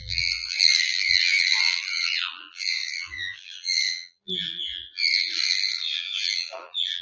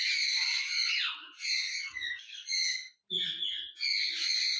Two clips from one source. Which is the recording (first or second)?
second